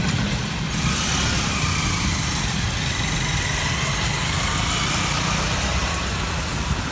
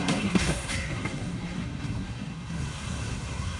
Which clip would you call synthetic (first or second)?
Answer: second